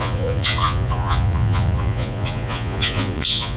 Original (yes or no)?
no